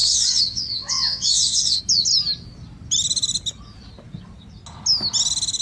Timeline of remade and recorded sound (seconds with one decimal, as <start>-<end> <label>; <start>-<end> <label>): 0.0-1.8 remade; 1.8-5.6 recorded